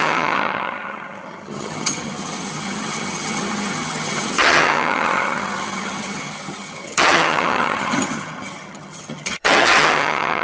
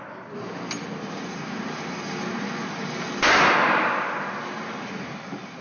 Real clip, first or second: second